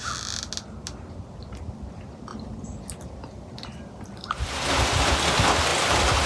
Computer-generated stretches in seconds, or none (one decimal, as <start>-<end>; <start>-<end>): none